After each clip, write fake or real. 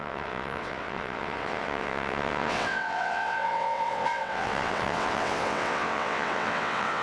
fake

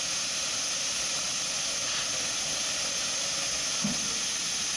real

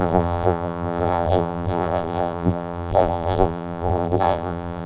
fake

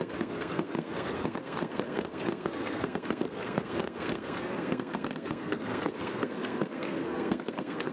fake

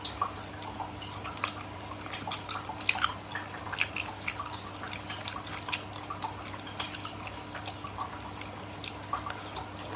real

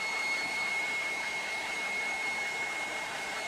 fake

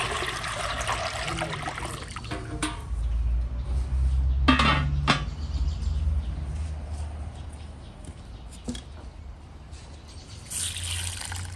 real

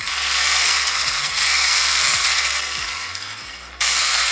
fake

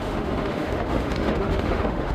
fake